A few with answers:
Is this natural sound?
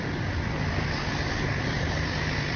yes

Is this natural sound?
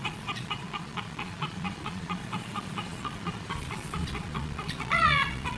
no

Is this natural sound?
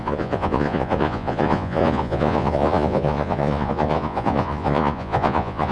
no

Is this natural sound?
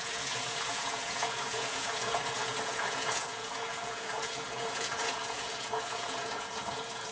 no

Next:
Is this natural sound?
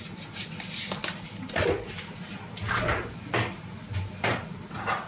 yes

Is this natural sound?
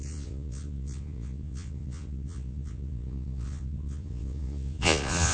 no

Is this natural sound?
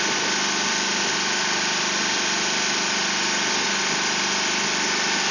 yes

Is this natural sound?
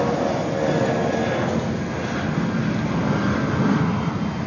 yes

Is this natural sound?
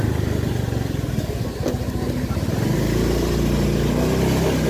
yes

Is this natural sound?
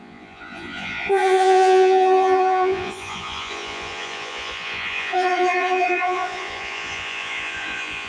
no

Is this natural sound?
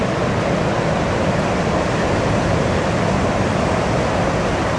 yes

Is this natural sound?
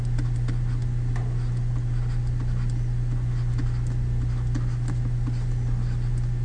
yes